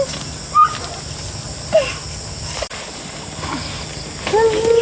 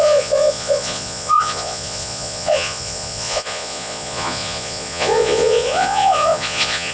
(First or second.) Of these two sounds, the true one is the first